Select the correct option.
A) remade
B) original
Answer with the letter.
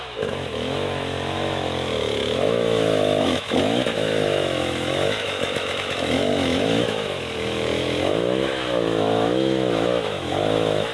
A